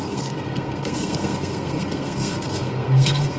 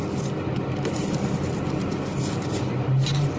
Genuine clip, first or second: second